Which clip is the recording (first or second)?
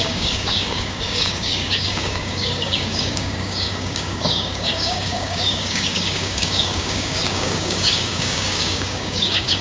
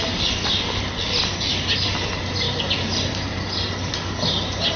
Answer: second